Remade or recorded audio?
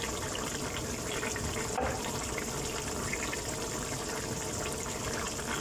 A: recorded